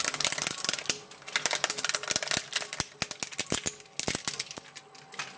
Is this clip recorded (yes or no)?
yes